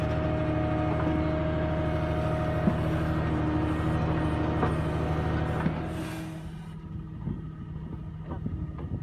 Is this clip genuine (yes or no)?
yes